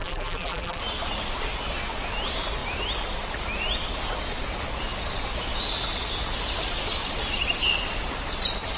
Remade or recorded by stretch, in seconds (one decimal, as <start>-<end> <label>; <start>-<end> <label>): 0.0-0.8 remade; 0.8-8.8 recorded